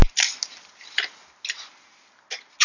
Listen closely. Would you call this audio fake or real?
real